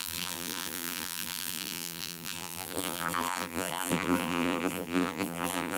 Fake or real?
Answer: fake